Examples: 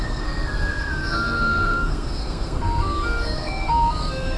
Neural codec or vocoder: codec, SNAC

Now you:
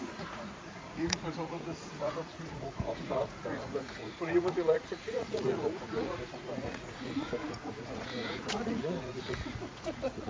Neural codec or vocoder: vocoder, Vocos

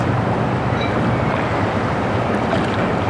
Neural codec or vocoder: vocoder, BigVGAN v2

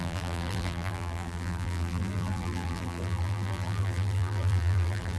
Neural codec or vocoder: vocoder, BigVGAN v2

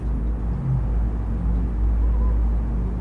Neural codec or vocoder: none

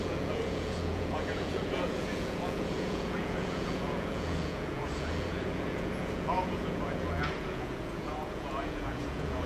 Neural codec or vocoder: vocoder, Vocos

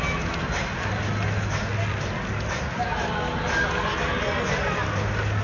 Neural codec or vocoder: none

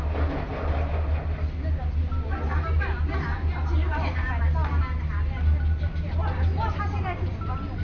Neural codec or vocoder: none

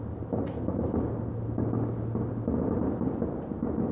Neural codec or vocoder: none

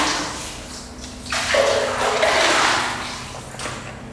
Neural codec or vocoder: none